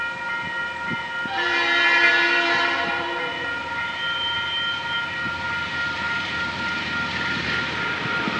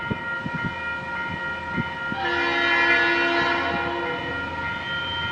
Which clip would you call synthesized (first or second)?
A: first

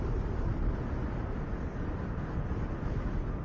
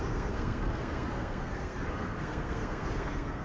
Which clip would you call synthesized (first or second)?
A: second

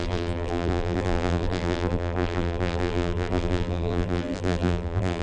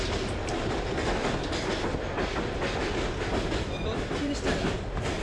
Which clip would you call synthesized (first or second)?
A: first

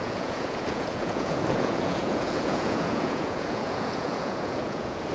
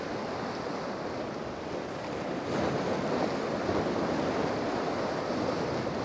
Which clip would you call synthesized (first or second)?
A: first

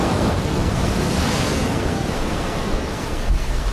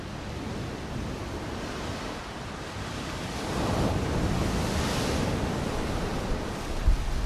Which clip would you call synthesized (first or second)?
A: first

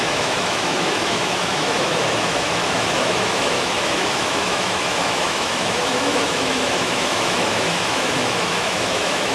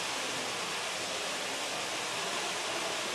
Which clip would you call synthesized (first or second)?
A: first